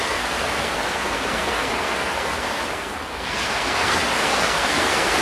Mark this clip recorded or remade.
remade